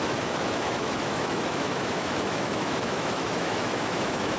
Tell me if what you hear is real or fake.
fake